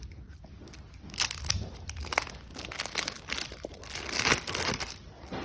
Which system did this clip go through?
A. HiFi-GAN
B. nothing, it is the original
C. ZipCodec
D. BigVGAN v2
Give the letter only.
B